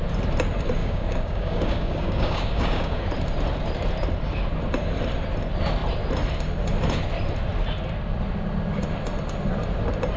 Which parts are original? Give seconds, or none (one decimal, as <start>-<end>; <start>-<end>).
0.0-0.8; 3.0-10.2